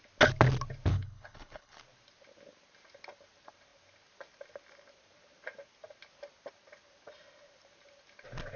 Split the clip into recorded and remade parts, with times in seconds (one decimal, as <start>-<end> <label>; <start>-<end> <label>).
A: 0.0-0.9 recorded; 0.9-1.8 remade; 1.8-8.6 recorded